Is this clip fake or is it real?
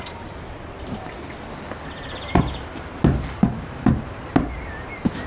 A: real